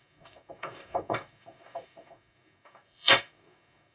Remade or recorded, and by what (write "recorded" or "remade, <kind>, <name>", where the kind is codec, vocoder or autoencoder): remade, codec, DAC